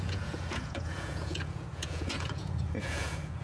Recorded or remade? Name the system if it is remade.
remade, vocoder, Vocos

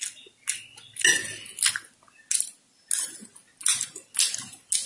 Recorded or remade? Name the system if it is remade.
recorded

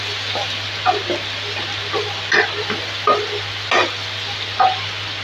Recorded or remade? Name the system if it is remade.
recorded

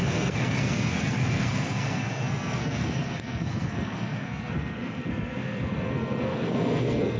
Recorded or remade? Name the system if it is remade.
remade, codec, SNAC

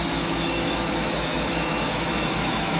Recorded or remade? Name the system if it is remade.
remade, autoencoder, DAC-VAE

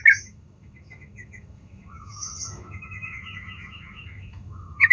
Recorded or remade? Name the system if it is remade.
remade, autoencoder, DAC-VAE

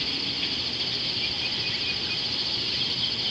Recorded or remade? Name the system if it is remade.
recorded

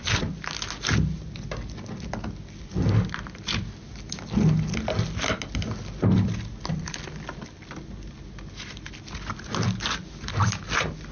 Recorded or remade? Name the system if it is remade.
recorded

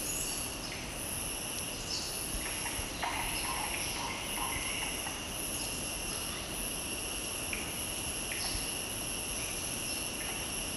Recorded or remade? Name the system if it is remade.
recorded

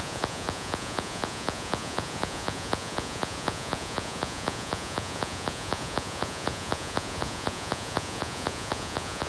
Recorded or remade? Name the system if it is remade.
remade, vocoder, Vocos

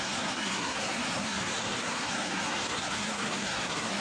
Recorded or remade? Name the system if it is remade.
remade, codec, SNAC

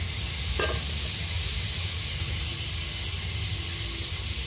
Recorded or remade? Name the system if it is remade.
recorded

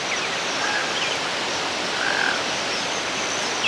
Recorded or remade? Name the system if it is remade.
recorded